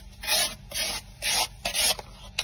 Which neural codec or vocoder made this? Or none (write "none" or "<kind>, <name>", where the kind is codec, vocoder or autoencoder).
none